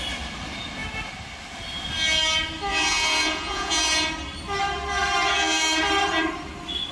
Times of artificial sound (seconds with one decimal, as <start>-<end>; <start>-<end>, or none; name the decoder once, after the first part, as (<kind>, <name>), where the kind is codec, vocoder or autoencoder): 2.7-4.1 (vocoder, Vocos)